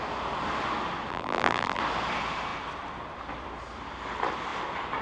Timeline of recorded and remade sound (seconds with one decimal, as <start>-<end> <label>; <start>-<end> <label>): 0.0-1.1 recorded; 1.1-1.8 remade; 1.8-5.0 recorded